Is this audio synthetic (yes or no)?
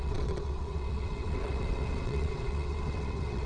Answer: yes